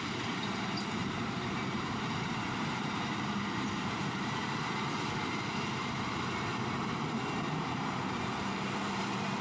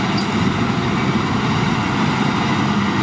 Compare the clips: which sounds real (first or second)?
second